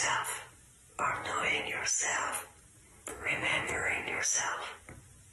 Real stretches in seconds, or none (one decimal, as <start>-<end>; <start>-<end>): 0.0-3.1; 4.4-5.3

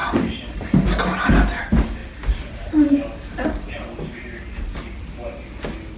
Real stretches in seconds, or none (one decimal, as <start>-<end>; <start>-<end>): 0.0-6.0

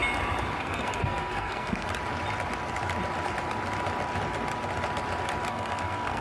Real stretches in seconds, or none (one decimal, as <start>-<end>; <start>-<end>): 0.0-0.6; 1.9-5.5

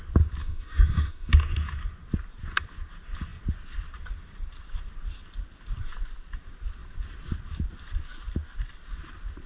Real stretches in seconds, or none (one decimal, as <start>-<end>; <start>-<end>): 0.0-0.4; 1.3-9.5

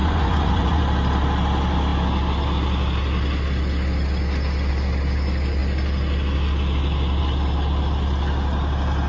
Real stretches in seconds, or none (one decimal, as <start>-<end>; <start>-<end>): 0.8-9.1

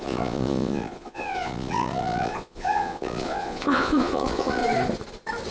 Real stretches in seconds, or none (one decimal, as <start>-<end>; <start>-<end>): 4.6-5.5

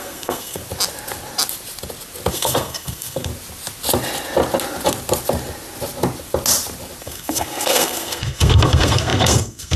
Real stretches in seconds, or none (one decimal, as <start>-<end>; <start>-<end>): 0.6-2.3; 3.3-7.0

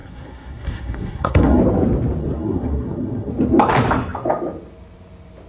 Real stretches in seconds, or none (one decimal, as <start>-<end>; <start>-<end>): 1.6-2.2; 3.3-5.5